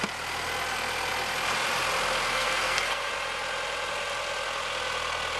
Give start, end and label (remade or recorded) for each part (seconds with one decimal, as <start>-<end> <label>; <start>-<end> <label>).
0.0-2.3 recorded; 2.3-3.1 remade; 3.1-5.4 recorded